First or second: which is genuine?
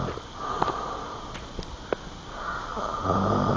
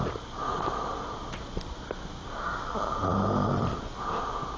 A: second